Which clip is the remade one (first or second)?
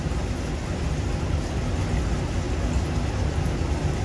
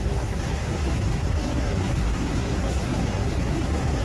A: second